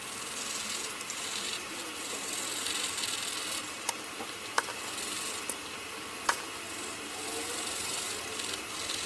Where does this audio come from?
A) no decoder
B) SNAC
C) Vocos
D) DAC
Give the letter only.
A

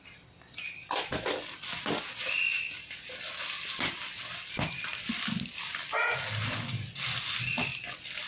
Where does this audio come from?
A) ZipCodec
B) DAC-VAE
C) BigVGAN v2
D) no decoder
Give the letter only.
D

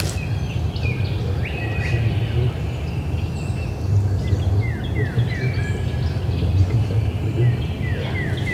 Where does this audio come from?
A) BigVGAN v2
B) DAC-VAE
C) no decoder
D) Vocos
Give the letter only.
C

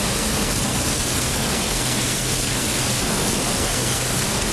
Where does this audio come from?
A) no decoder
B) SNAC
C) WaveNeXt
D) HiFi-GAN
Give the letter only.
B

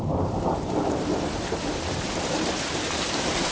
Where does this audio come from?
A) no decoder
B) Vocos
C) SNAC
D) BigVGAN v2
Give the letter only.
D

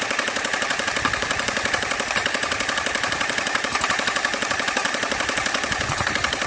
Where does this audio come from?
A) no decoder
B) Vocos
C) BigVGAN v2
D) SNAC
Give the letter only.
C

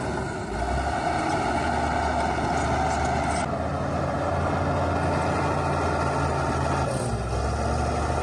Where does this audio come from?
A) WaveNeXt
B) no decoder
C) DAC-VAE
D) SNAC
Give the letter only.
B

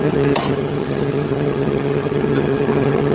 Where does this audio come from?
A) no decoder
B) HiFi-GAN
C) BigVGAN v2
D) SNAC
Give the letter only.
B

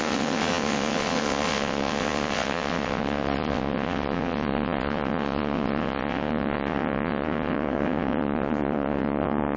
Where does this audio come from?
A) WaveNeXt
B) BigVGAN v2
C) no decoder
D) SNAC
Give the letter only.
A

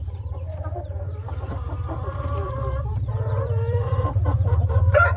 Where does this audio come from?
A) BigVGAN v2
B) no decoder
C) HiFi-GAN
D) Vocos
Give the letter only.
A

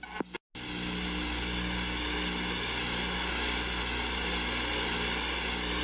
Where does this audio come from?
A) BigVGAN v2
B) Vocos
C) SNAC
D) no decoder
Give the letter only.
D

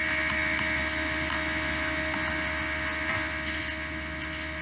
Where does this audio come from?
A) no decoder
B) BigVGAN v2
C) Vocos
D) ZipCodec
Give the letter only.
A